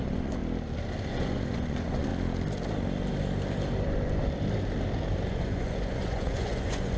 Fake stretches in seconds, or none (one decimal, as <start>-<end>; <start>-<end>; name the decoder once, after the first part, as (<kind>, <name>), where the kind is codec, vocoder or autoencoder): 0.0-0.4 (vocoder, Vocos); 1.1-2.1; 5.3-7.0